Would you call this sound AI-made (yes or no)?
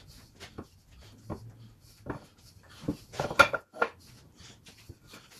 no